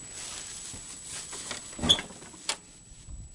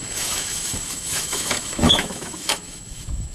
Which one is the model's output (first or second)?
second